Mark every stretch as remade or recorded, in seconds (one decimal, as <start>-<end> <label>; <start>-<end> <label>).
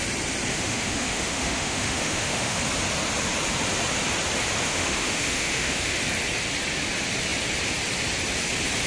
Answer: 0.0-0.5 recorded; 0.5-2.6 remade; 2.6-4.7 recorded; 4.7-6.0 remade; 6.0-8.9 recorded